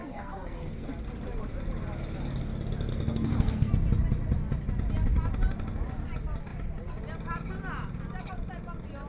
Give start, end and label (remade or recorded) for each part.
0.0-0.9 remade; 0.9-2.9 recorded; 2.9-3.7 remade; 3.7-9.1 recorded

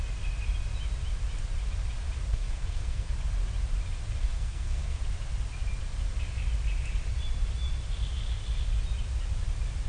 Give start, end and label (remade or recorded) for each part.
0.0-2.3 recorded; 2.3-3.1 remade; 3.1-4.2 recorded; 4.2-5.0 remade; 5.0-9.9 recorded

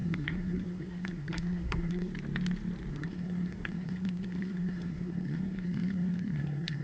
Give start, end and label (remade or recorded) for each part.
0.0-2.1 remade; 2.1-2.9 recorded; 2.9-6.8 remade

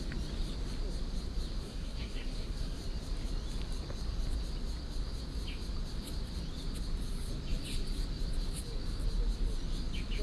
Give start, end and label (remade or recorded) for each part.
0.0-1.6 recorded; 1.6-2.8 remade; 2.8-10.2 recorded

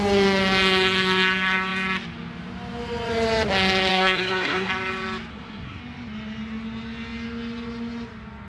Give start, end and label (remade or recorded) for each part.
0.0-3.9 recorded; 3.9-4.7 remade; 4.7-5.3 recorded; 5.3-5.8 remade; 5.8-8.5 recorded

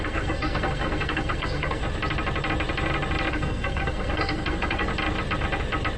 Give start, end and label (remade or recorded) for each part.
0.0-1.8 remade; 1.8-3.3 recorded; 3.3-4.9 remade; 4.9-6.0 recorded

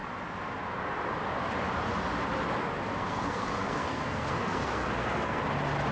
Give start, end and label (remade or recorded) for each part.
0.0-2.9 recorded; 2.9-5.4 remade; 5.4-5.9 recorded